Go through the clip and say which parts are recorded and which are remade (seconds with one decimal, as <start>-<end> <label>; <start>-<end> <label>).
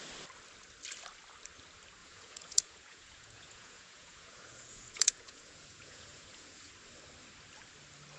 0.0-2.0 recorded; 2.0-6.7 remade; 6.7-8.2 recorded